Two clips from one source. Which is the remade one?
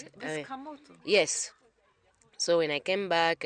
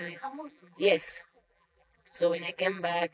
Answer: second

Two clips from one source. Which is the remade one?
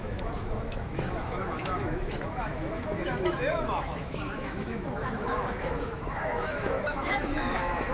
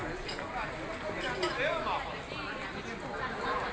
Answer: first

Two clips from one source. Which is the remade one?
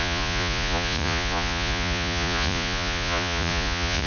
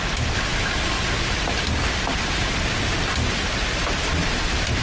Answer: first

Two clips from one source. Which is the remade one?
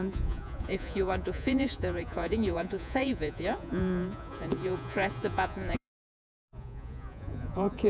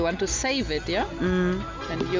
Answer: first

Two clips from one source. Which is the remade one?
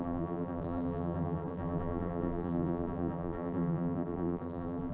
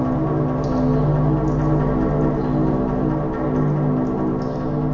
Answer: first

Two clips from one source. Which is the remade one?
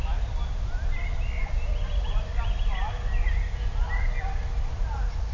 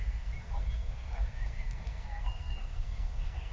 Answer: second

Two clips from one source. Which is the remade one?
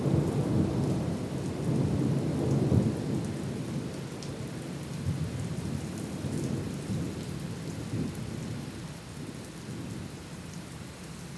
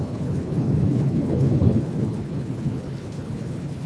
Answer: second